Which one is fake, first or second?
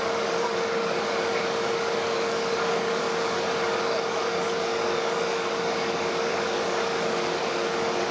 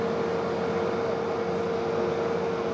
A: first